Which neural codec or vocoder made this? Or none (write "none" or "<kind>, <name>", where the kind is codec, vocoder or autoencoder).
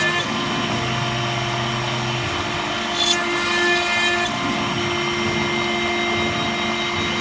none